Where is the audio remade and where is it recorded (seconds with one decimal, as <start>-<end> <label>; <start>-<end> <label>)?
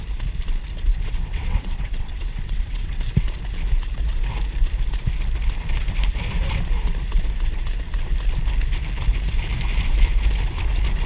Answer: 0.0-0.9 recorded; 0.9-3.0 remade; 3.0-11.1 recorded